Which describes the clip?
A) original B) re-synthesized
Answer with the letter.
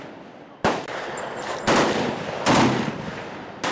A